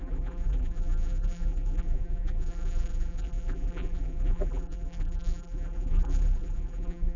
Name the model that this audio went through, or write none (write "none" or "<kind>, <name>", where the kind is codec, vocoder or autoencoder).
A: vocoder, BigVGAN v2